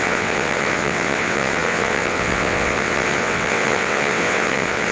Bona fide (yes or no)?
no